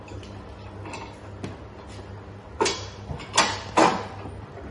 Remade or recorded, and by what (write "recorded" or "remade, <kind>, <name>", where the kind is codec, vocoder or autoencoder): recorded